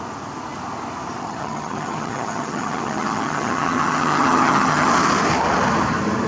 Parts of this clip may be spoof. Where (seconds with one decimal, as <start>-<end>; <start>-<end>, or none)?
1.2-4.9